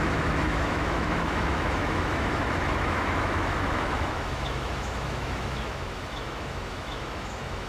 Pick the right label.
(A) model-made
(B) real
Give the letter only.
A